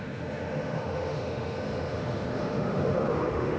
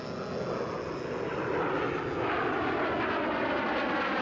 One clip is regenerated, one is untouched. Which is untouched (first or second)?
second